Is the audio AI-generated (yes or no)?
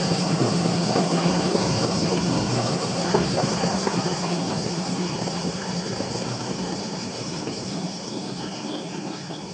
yes